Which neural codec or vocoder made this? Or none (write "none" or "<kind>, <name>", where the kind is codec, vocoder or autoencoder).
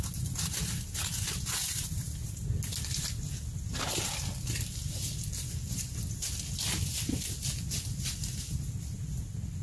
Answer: none